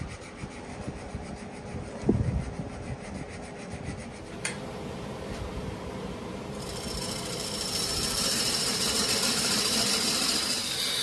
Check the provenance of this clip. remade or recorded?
remade